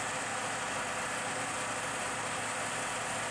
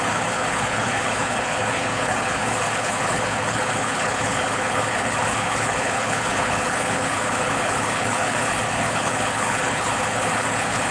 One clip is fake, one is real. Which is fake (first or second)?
second